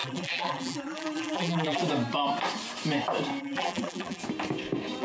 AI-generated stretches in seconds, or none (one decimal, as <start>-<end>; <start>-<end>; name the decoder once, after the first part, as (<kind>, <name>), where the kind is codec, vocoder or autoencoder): 0.0-1.8 (vocoder, BigVGAN v2); 3.4-4.2